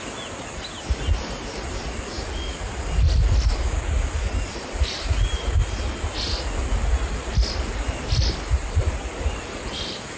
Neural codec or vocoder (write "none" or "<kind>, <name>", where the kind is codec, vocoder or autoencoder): none